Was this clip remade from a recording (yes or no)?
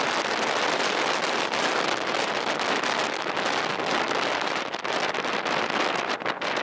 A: no